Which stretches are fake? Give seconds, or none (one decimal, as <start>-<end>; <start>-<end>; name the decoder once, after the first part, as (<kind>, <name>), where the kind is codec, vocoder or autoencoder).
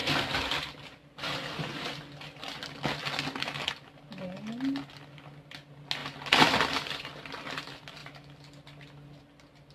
0.0-3.7 (vocoder, BigVGAN v2); 6.0-7.5; 8.0-9.2